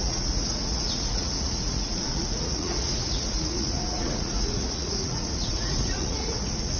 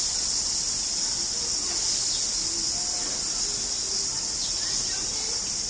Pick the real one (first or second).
second